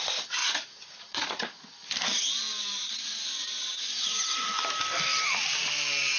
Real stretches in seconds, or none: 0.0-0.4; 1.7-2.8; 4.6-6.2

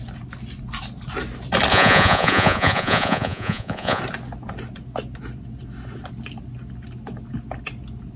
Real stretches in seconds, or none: 0.0-1.7; 4.0-8.2

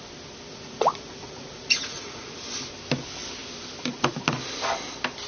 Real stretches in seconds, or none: 0.0-0.5; 2.3-5.3